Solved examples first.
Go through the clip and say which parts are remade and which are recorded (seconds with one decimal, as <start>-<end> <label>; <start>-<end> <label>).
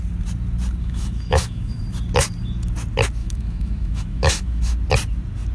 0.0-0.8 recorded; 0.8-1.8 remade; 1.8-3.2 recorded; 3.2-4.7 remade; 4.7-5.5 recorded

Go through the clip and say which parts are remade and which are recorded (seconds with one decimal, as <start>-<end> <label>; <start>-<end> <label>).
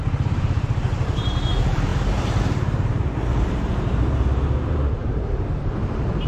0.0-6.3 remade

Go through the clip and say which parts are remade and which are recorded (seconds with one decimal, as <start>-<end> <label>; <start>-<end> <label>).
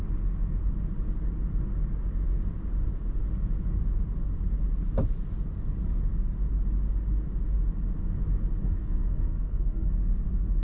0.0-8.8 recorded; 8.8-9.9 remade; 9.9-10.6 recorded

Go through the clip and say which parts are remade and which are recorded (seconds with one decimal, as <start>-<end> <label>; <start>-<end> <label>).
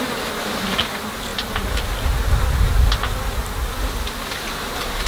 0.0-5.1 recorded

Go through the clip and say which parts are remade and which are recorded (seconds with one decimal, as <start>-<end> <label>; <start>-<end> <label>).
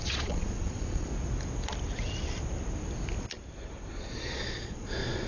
0.0-1.1 remade; 1.1-3.9 recorded; 3.9-5.3 remade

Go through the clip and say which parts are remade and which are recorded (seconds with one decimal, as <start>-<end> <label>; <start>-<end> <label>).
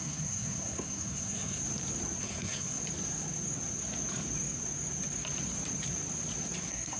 0.0-1.6 remade; 1.6-2.2 recorded; 2.2-2.8 remade; 2.8-6.6 recorded; 6.6-7.0 remade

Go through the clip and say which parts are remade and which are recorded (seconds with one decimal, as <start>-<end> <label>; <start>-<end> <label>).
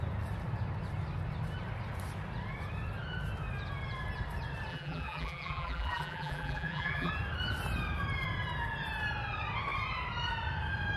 0.0-4.7 recorded; 4.7-7.1 remade; 7.1-11.0 recorded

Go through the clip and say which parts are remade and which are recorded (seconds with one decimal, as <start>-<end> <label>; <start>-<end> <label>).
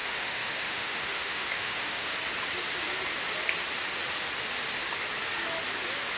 0.0-2.1 remade; 2.1-6.2 recorded